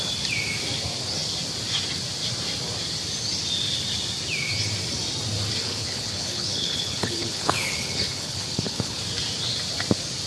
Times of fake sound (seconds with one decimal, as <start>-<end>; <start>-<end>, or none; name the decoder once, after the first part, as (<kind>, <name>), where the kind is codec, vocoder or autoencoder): 5.6-9.0 (codec, HILCodec)

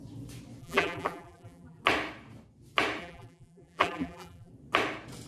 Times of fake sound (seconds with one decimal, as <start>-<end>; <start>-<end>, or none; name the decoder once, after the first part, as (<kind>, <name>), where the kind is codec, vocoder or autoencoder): 0.6-1.8 (vocoder, BigVGAN v2); 3.0-4.5

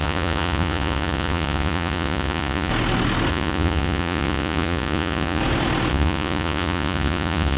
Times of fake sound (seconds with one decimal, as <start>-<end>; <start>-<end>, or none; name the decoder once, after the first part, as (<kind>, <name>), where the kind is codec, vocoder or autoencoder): 0.0-2.7 (vocoder, Vocos); 3.3-5.4; 5.9-7.6

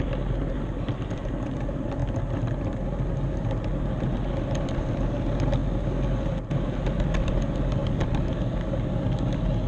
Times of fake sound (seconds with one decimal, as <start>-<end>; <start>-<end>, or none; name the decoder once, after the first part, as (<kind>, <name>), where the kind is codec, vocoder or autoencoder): none

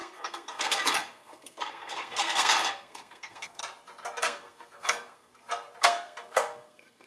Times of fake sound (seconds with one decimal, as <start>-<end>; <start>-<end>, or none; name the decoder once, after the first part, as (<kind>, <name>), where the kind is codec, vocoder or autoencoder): 0.0-3.6 (codec, SNAC); 4.2-5.3; 5.8-7.1

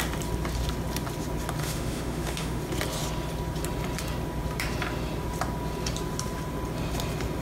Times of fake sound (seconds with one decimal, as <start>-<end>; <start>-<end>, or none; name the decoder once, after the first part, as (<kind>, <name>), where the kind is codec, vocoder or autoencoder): 1.6-2.6 (autoencoder, DAC-VAE)

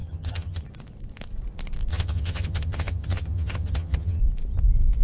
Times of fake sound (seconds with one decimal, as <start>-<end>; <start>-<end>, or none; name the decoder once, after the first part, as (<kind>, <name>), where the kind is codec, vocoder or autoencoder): 0.0-0.6 (vocoder, HiFi-GAN); 1.9-4.2